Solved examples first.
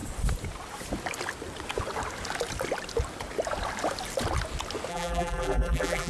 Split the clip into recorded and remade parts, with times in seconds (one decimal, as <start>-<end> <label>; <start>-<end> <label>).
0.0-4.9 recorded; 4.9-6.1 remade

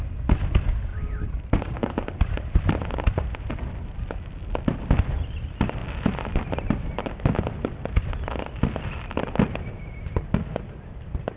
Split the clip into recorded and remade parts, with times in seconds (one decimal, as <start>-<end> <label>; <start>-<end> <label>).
0.0-0.9 recorded; 0.9-3.5 remade; 3.5-11.4 recorded

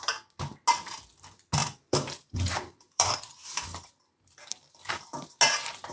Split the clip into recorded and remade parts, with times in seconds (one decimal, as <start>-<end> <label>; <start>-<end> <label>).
0.0-1.6 recorded; 1.6-5.1 remade; 5.1-5.9 recorded

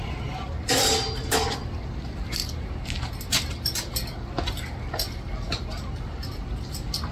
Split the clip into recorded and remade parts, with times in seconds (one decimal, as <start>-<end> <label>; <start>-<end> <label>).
0.0-2.4 remade; 2.4-7.1 recorded